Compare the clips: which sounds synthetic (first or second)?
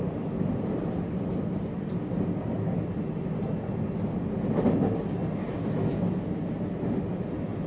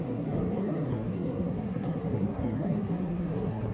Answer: second